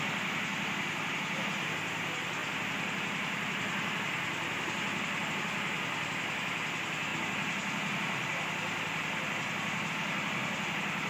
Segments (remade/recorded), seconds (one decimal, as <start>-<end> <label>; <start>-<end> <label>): 0.0-11.1 recorded